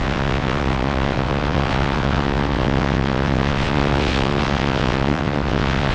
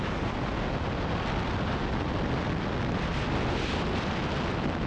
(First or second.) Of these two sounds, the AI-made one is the first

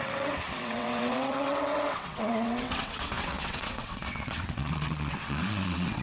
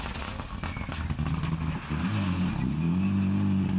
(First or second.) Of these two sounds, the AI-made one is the first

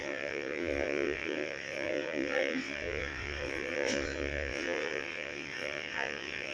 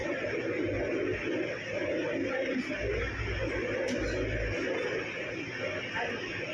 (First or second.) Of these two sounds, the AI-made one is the first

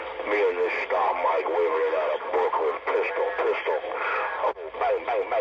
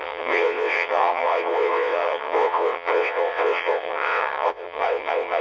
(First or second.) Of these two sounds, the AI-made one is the second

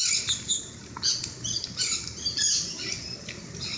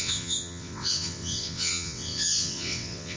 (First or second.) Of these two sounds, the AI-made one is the second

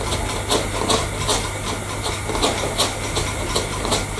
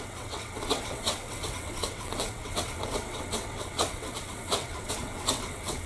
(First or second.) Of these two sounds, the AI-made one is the second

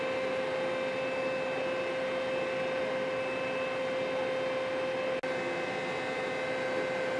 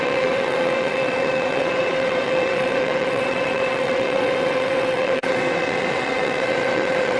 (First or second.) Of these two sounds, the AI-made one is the second